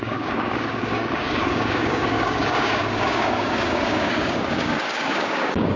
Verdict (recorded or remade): remade